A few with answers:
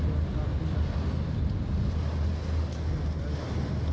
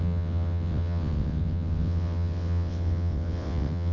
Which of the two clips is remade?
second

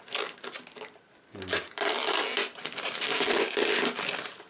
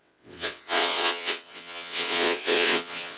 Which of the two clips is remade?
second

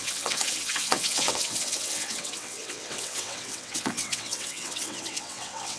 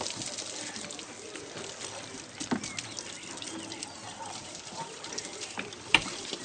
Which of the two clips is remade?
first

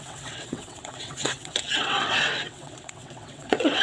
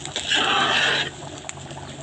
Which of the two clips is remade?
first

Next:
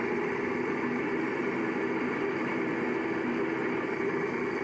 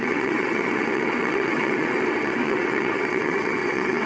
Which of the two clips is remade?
second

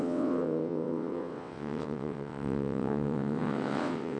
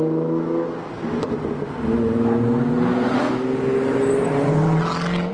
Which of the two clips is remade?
first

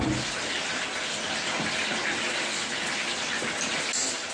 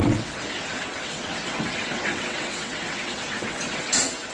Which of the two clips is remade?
second